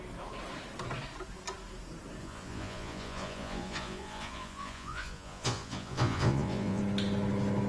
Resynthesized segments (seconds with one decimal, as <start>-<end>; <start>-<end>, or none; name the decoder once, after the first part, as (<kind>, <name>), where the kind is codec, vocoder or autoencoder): 2.2-6.8 (vocoder, Vocos)